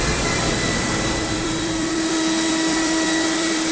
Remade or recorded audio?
remade